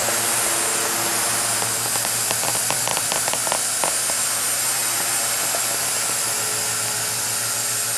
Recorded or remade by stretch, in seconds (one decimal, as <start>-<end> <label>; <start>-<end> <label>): 0.0-8.0 recorded